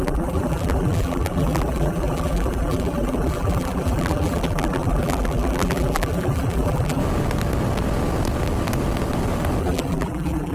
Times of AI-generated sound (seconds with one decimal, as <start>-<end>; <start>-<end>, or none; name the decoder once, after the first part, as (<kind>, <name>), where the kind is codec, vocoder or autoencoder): 0.0-7.0 (vocoder, BigVGAN v2); 9.6-10.5